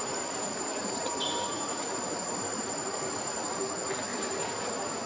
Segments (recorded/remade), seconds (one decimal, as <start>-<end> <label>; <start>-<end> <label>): 0.0-3.1 remade; 3.1-4.1 recorded; 4.1-5.1 remade